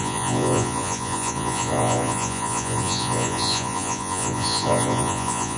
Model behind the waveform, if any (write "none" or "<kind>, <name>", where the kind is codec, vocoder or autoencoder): vocoder, Vocos